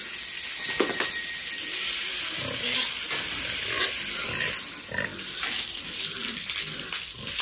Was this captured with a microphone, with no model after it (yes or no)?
yes